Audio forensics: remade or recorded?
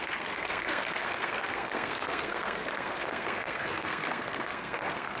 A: remade